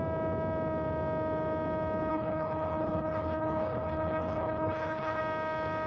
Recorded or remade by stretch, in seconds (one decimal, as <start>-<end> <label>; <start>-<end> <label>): 0.0-2.1 recorded; 2.1-5.2 remade; 5.2-5.9 recorded